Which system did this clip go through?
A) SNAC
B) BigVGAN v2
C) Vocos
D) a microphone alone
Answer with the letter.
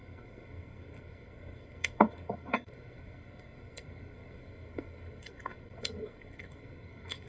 A